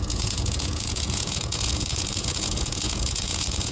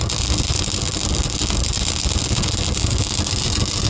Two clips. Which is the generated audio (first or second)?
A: first